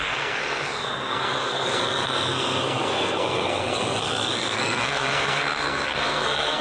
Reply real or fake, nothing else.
fake